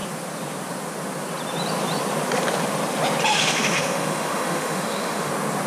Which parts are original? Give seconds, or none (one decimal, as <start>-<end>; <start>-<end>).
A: 0.0-3.3; 5.3-5.7